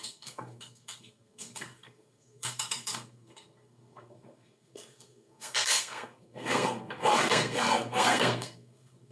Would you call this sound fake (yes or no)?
yes